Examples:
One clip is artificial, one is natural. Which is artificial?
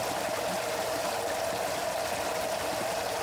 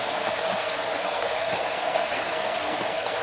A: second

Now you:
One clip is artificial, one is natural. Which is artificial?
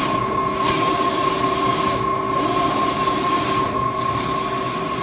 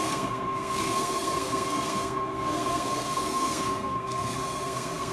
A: second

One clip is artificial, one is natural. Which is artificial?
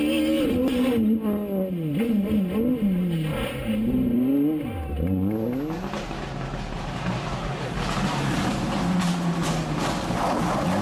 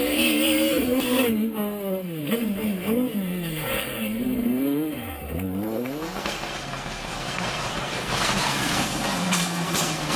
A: second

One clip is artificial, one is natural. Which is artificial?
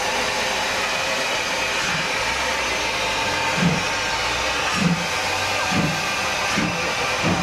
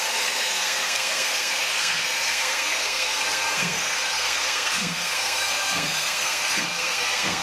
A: second